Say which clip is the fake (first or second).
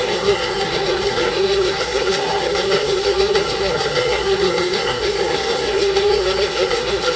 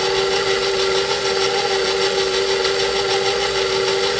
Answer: first